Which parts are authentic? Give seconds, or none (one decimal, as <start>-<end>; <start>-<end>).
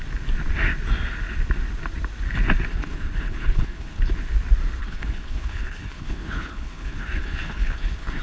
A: 0.0-2.7; 4.1-4.8